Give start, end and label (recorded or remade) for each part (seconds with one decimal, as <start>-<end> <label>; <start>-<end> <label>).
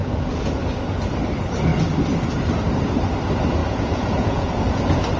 0.0-0.6 remade; 0.6-3.6 recorded; 3.6-4.8 remade; 4.8-5.2 recorded